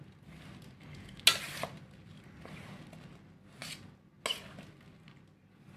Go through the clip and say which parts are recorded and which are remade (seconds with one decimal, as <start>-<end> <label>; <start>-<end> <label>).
0.0-5.8 recorded